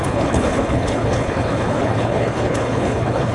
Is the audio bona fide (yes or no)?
no